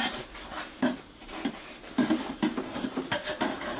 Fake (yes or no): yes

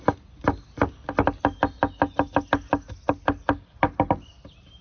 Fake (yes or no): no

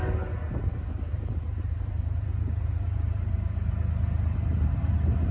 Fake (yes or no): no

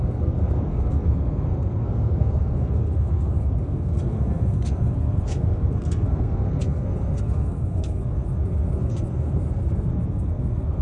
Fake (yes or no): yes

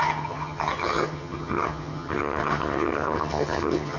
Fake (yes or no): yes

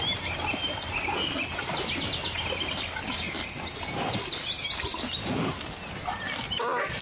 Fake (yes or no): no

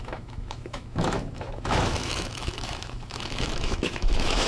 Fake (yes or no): yes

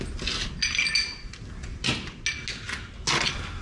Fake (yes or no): no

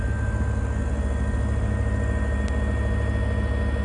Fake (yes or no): no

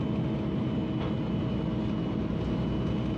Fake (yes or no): no